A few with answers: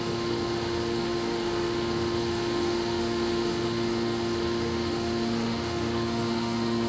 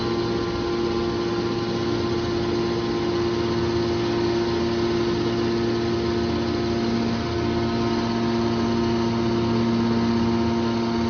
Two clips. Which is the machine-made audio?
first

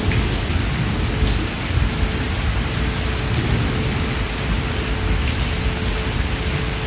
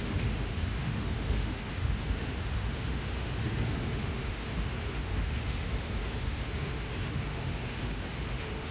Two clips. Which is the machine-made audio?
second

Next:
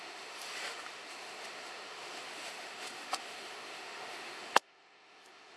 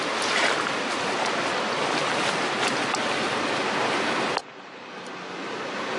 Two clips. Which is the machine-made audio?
first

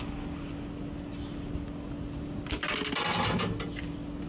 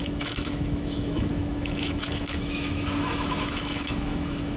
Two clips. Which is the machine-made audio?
second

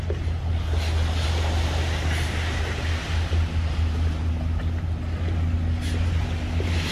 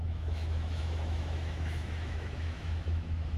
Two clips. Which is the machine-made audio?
second